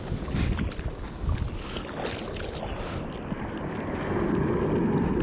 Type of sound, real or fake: real